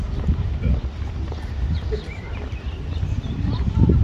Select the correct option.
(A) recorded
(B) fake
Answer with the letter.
A